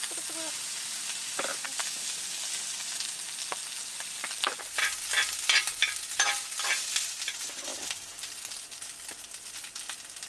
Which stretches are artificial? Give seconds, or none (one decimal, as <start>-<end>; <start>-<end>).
none